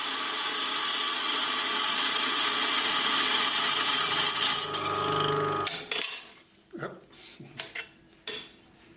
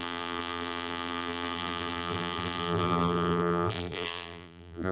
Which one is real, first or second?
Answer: first